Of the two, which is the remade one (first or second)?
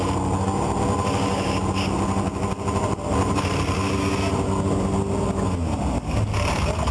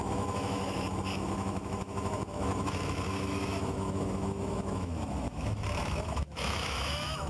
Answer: second